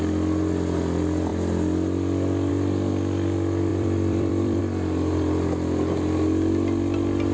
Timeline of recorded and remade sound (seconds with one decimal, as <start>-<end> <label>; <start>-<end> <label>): 0.0-3.7 recorded; 3.7-4.6 remade; 4.6-7.3 recorded